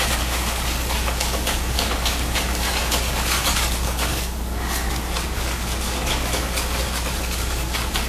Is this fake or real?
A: fake